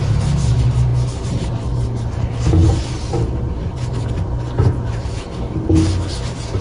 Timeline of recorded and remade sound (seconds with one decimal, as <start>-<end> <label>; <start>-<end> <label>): 0.0-6.6 recorded